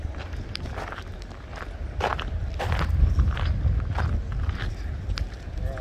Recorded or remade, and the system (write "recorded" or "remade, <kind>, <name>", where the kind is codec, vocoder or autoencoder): recorded